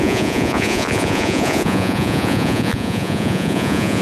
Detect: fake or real fake